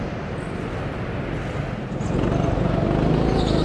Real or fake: real